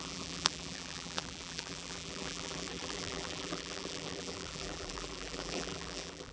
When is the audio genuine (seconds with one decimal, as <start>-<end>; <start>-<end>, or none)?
none